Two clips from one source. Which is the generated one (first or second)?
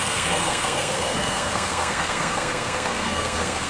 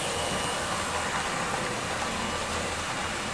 first